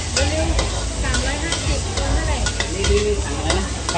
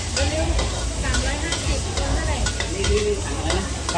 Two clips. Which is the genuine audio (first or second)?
first